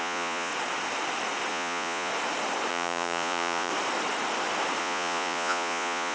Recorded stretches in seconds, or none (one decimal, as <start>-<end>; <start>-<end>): 0.5-1.5; 2.1-2.7; 3.7-4.8